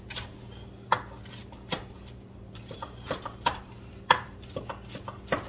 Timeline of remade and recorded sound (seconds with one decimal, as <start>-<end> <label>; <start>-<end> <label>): 0.0-1.4 recorded; 1.4-4.7 remade; 4.7-5.5 recorded